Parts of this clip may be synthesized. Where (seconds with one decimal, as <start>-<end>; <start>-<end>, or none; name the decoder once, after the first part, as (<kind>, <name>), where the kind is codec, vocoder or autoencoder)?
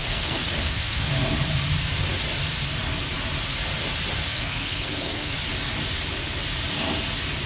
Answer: 0.0-1.1 (codec, SNAC); 4.3-5.4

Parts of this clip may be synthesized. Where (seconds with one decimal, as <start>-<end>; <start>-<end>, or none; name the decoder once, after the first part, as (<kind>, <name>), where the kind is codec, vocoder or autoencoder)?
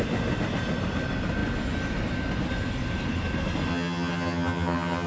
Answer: 3.7-5.1 (vocoder, HiFi-GAN)